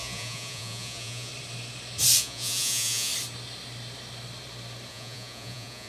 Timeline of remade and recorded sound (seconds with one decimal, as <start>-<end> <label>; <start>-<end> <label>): 0.0-1.3 remade; 1.3-2.2 recorded; 2.2-3.1 remade; 3.1-4.9 recorded; 4.9-5.9 remade